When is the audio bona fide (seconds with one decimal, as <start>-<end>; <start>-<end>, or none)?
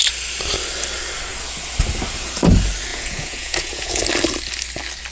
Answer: 0.0-2.9; 4.0-5.1